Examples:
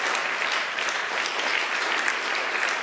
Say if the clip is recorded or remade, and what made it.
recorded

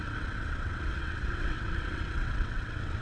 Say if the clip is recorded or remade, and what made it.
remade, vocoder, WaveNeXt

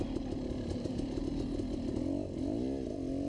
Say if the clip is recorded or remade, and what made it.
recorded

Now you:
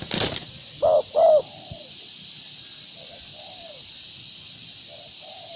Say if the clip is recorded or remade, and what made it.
recorded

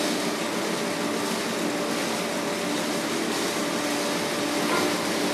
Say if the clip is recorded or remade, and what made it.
recorded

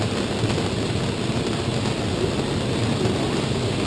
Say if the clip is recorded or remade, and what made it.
recorded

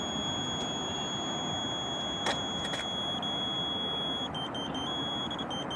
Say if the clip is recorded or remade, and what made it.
recorded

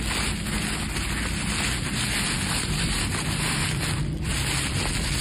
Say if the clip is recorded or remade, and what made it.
recorded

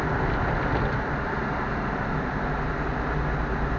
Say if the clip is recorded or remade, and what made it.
recorded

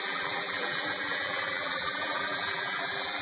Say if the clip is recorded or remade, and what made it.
remade, vocoder, BigVGAN v2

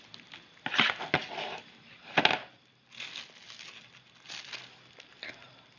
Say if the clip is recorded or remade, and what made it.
recorded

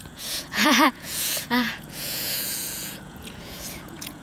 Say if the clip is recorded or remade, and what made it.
remade, vocoder, Vocos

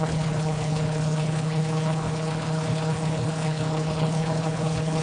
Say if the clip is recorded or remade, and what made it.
remade, codec, HILCodec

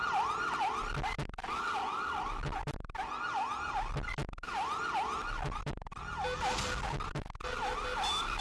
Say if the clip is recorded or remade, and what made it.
recorded